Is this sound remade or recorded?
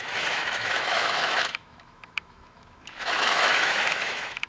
remade